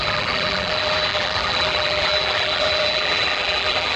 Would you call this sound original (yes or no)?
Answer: no